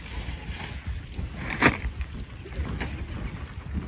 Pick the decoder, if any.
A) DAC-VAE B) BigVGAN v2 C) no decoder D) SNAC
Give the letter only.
C